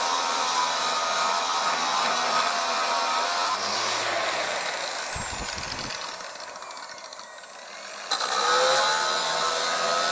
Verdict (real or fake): real